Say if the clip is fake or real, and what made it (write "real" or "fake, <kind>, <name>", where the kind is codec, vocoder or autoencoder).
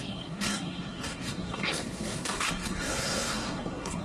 fake, codec, SNAC